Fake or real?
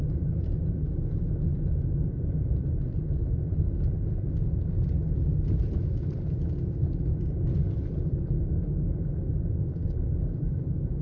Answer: real